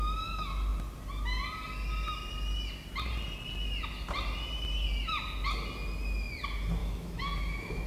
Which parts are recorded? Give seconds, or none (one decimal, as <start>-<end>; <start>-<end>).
0.0-6.8